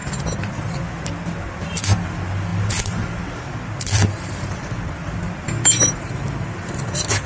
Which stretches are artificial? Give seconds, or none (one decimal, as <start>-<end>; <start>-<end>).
none